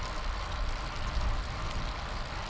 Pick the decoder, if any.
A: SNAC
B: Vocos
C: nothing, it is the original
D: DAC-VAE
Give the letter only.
C